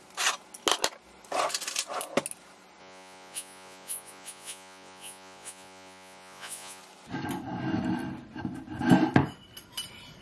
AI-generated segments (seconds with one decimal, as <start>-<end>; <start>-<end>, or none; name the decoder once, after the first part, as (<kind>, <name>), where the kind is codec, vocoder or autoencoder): 2.8-6.8 (vocoder, Vocos)